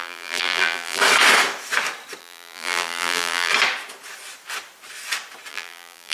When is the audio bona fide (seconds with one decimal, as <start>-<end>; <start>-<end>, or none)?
1.0-2.2; 3.5-5.5